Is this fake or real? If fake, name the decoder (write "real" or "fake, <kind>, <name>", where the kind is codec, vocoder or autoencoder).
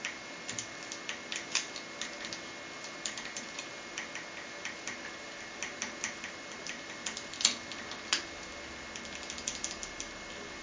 real